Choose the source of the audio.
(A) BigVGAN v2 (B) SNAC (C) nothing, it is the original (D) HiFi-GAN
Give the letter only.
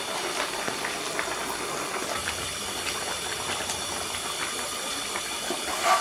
C